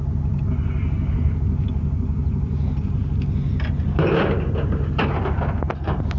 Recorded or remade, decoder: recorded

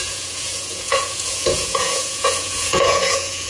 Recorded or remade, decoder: remade, vocoder, Vocos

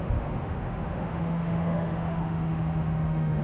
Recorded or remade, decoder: remade, autoencoder, DAC-VAE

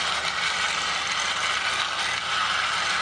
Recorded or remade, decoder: recorded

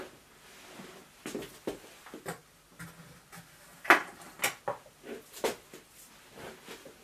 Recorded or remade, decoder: recorded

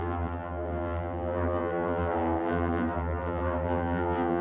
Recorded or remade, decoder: remade, vocoder, BigVGAN v2